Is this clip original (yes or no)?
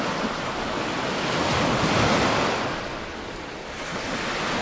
yes